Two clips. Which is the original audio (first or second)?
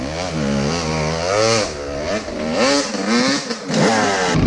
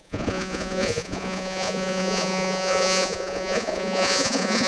first